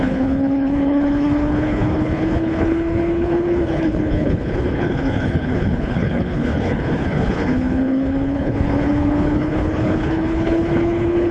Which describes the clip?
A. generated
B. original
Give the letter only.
A